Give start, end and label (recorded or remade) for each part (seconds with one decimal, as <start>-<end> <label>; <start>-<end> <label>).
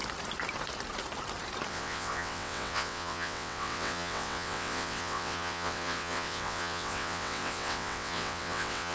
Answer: 0.0-1.7 recorded; 1.7-8.9 remade